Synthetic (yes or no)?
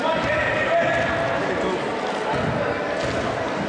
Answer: no